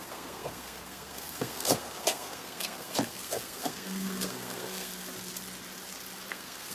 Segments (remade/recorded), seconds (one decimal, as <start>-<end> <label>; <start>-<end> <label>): 0.0-4.9 remade; 4.9-6.3 recorded; 6.3-6.7 remade